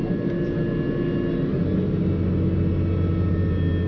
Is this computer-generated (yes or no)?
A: no